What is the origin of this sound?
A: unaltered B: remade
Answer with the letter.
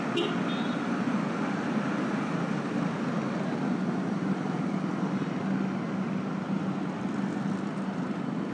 A